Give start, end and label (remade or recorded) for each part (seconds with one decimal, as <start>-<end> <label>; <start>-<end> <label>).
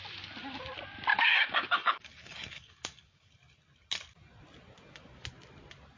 0.0-1.1 recorded; 1.1-3.3 remade; 3.3-6.0 recorded